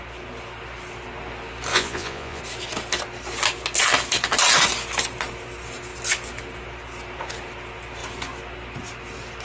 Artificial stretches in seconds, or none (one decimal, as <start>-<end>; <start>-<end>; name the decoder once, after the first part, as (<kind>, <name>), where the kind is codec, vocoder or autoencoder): 1.7-2.4 (vocoder, Vocos)